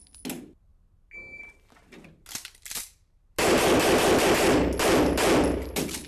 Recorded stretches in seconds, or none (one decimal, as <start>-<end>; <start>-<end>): 0.0-6.1